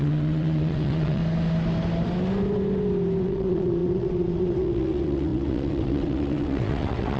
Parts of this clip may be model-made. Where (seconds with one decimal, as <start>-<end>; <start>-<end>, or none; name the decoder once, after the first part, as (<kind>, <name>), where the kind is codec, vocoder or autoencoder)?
0.0-1.2 (vocoder, WaveNeXt); 3.2-7.2